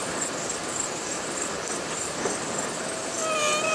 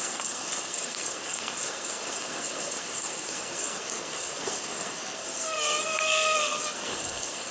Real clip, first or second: first